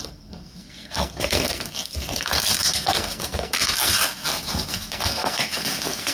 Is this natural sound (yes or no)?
no